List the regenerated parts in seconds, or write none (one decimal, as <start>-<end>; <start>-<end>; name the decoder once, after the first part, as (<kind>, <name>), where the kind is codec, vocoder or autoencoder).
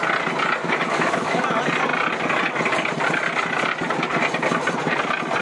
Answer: 0.6-1.4 (autoencoder, DAC-VAE)